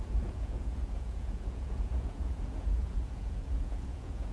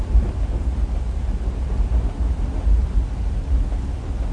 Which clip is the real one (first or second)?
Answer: second